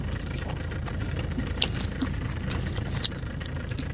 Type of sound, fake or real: real